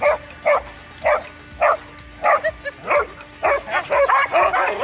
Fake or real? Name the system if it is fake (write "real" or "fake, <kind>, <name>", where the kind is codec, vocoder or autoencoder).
real